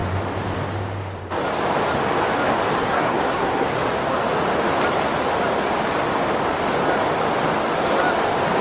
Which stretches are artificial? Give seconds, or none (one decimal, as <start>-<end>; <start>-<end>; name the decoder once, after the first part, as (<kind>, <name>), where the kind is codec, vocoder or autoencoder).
2.8-3.8 (codec, SNAC)